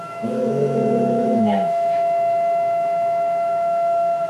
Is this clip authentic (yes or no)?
no